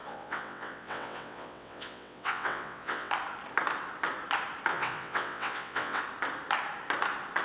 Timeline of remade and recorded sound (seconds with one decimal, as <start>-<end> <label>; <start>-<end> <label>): 0.0-3.1 remade; 3.1-4.7 recorded; 4.7-6.0 remade; 6.0-7.4 recorded